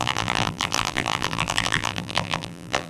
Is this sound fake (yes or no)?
yes